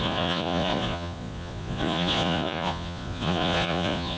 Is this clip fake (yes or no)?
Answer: yes